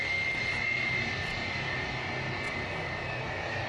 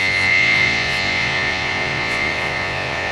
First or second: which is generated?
second